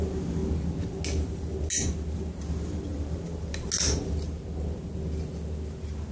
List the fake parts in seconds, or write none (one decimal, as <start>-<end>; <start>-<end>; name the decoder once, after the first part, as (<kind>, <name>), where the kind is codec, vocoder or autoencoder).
none